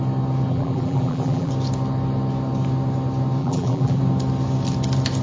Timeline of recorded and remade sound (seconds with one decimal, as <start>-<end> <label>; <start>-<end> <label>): 0.0-0.5 recorded; 0.5-1.5 remade; 1.5-3.4 recorded; 3.4-4.0 remade; 4.0-5.2 recorded